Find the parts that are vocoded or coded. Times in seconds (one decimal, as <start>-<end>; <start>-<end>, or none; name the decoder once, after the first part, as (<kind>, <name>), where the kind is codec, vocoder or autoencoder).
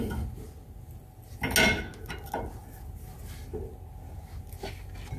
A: none